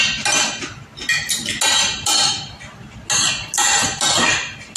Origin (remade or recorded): recorded